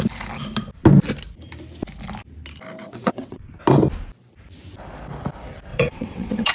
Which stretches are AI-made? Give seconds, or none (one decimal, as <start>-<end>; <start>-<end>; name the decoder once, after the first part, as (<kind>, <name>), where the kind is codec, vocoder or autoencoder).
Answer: 2.8-3.5 (vocoder, WaveNeXt); 5.7-6.5